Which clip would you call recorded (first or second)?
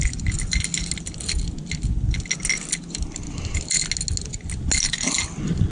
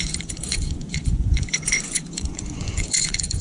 first